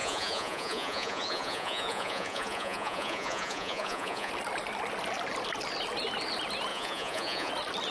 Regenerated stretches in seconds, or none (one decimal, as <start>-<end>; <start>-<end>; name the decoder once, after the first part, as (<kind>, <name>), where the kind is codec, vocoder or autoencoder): 0.0-4.3 (vocoder, Vocos); 6.7-7.5